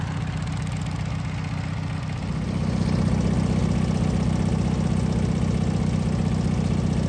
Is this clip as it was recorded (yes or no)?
yes